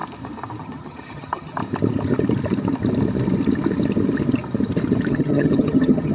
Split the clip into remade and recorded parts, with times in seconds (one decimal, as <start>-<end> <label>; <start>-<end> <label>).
0.0-0.6 recorded; 0.6-1.6 remade; 1.6-5.1 recorded; 5.1-6.1 remade